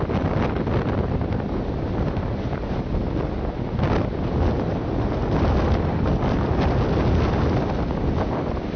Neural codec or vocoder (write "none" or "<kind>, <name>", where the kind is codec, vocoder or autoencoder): none